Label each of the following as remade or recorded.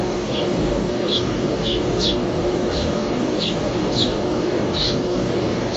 remade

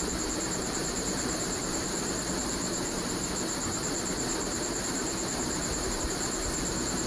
remade